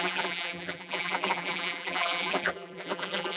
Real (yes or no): no